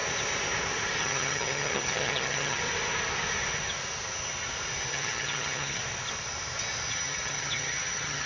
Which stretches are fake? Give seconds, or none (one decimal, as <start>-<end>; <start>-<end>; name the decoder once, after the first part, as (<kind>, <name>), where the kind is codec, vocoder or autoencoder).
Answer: 1.0-2.6 (vocoder, HiFi-GAN); 4.9-5.8; 6.9-8.3